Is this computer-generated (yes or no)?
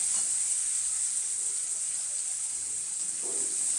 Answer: no